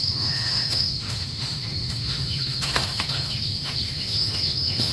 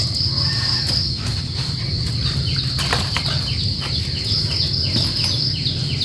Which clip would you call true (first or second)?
second